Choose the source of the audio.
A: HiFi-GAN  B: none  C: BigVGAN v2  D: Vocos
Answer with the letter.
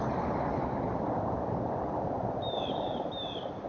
C